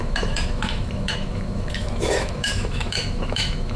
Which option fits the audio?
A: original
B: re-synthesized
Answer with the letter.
B